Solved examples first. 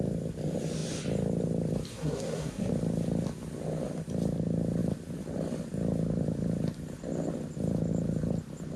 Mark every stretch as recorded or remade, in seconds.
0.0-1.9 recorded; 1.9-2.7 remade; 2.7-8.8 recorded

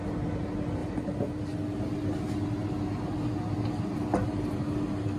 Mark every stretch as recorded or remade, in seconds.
0.0-0.8 recorded; 0.8-1.4 remade; 1.4-5.2 recorded

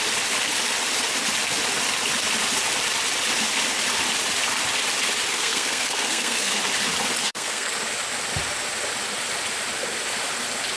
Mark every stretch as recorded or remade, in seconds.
0.0-5.3 recorded; 5.3-6.6 remade; 6.6-7.2 recorded; 7.2-7.7 remade; 7.7-10.8 recorded

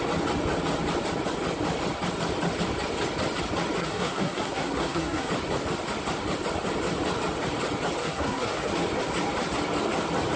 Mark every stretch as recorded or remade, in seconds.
0.0-3.8 recorded; 3.8-5.3 remade; 5.3-8.0 recorded; 8.0-8.7 remade; 8.7-10.4 recorded

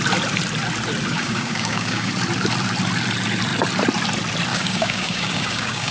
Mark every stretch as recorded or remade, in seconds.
0.0-1.1 recorded; 1.1-2.1 remade; 2.1-4.5 recorded; 4.5-5.9 remade